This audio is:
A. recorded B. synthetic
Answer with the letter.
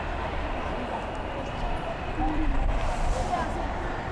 B